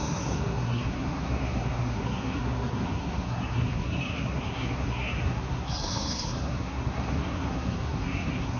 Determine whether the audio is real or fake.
fake